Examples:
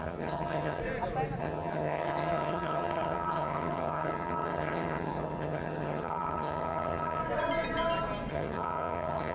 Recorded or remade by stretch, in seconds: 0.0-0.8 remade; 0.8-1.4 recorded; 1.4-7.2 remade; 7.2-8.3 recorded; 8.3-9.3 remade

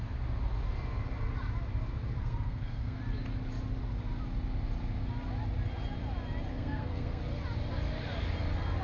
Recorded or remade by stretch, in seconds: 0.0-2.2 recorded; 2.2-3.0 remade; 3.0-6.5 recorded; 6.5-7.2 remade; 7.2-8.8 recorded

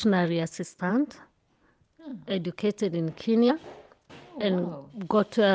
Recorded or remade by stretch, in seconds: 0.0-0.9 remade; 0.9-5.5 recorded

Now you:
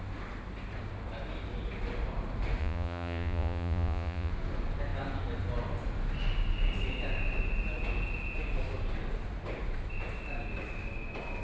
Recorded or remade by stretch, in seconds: 0.0-2.6 recorded; 2.6-4.3 remade; 4.3-11.4 recorded

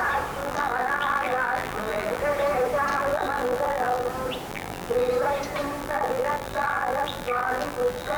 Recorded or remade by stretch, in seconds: 0.0-0.4 recorded; 0.4-2.2 remade; 2.2-2.9 recorded; 2.9-4.1 remade; 4.1-4.5 recorded; 4.5-5.1 remade; 5.1-5.8 recorded; 5.8-8.2 remade